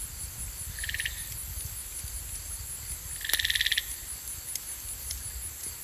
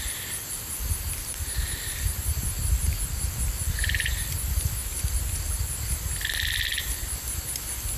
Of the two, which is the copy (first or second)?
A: second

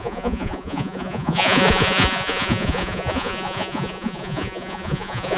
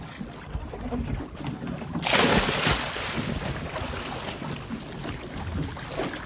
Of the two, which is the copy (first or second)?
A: first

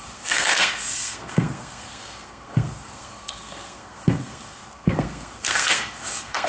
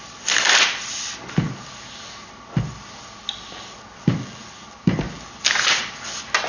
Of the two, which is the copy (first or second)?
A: first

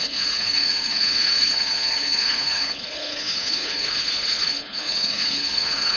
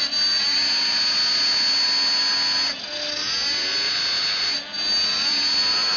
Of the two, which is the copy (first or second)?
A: first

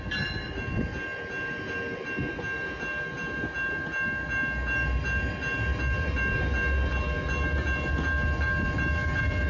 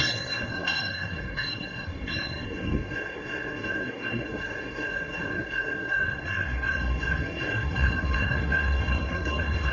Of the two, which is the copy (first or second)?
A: second